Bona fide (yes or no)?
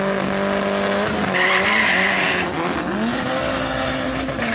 yes